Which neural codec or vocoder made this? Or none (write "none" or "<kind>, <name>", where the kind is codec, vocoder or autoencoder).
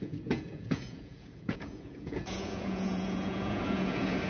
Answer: vocoder, Vocos